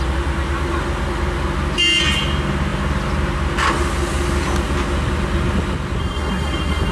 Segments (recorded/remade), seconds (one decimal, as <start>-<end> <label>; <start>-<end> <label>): 0.0-6.0 recorded; 6.0-6.9 remade